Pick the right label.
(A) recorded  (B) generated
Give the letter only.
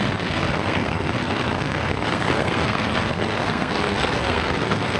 B